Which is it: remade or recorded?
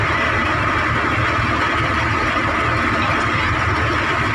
recorded